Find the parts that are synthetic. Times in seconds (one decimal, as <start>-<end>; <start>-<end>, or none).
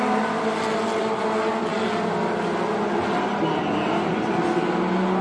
none